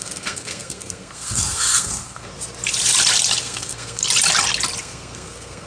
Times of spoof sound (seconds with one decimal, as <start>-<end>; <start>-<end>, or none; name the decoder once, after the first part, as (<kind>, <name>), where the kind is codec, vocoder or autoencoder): 0.0-2.3 (codec, SNAC); 3.4-4.0; 4.8-5.7